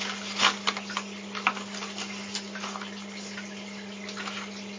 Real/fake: real